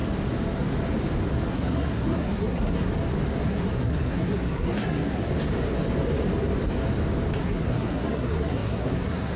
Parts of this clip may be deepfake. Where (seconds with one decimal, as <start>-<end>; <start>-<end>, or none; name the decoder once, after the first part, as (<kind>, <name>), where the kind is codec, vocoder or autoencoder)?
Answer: 1.5-2.9 (codec, SNAC); 3.4-5.3; 7.4-9.4